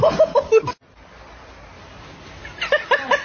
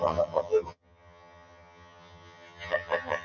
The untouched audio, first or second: first